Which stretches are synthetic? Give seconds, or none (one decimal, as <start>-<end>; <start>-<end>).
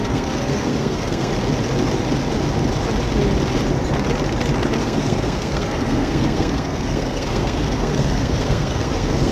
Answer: 0.0-1.3; 4.8-9.3